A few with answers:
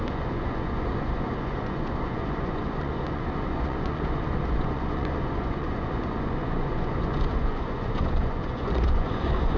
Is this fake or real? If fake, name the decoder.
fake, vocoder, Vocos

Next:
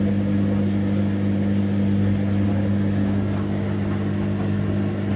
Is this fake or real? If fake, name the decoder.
real